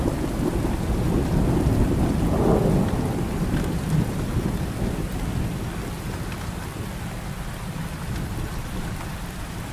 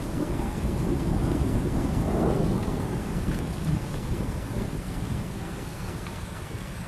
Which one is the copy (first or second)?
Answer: second